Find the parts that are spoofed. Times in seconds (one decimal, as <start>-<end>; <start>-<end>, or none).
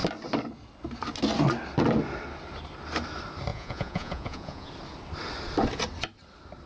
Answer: 3.5-4.7